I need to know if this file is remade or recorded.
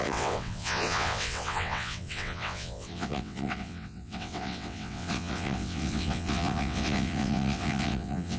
remade